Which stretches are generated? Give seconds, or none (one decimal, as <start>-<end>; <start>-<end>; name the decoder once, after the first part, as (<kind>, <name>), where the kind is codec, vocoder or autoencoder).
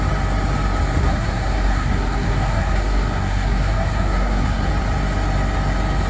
1.0-4.7 (codec, SNAC)